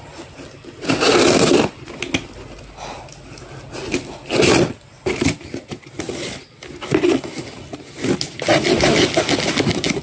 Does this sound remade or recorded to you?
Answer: recorded